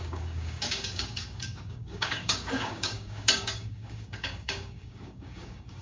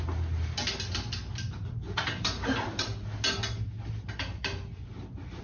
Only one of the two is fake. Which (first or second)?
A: first